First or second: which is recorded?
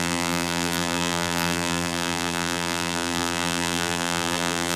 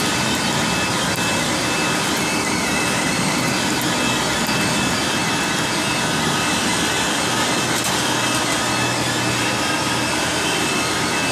second